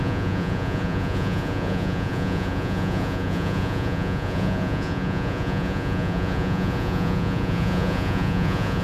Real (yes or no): no